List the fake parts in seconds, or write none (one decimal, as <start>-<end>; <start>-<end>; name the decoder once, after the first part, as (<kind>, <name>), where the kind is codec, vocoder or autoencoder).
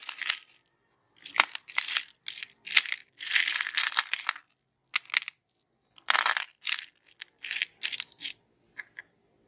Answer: none